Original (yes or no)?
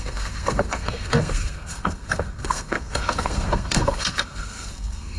no